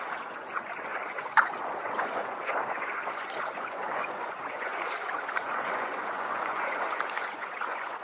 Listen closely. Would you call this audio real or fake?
fake